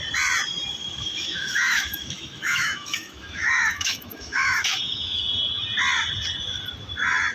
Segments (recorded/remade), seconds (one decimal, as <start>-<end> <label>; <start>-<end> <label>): 0.0-0.8 recorded; 0.8-5.2 remade; 5.2-7.3 recorded